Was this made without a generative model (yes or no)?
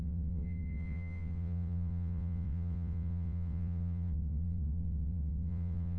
no